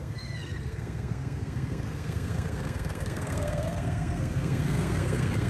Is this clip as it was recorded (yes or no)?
no